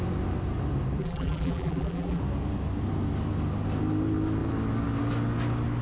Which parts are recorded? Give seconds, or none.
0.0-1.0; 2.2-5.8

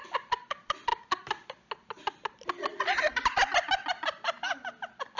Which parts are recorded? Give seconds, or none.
0.0-5.2

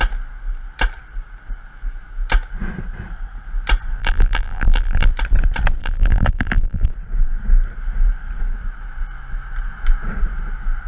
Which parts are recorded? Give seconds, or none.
0.0-4.0; 5.1-5.8; 6.9-10.9